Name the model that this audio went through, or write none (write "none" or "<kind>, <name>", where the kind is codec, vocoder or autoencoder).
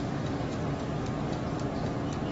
none